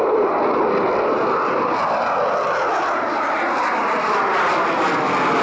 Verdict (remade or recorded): recorded